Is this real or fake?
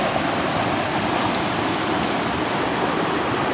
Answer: real